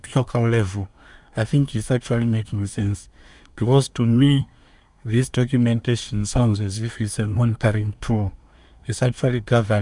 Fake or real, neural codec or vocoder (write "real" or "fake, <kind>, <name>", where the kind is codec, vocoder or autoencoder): fake, codec, SNAC